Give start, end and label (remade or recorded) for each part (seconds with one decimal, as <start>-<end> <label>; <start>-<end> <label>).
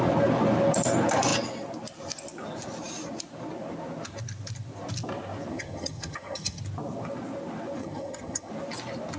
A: 0.0-5.5 recorded; 5.5-6.6 remade; 6.6-7.8 recorded; 7.8-8.5 remade; 8.5-9.2 recorded